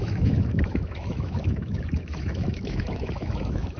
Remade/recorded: remade